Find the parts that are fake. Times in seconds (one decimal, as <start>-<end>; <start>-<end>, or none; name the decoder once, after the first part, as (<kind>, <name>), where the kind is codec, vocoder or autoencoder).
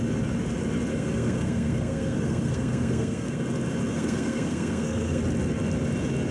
0.9-3.4 (codec, SNAC); 3.9-5.2